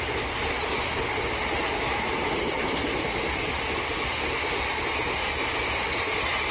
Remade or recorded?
recorded